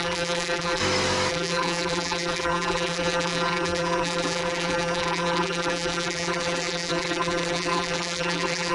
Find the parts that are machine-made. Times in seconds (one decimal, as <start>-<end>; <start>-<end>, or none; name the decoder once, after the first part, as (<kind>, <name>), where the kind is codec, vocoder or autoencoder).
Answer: 0.0-0.8 (vocoder, BigVGAN v2); 1.3-8.7